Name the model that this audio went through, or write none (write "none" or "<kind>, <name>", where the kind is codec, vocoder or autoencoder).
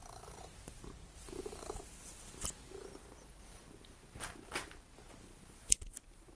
none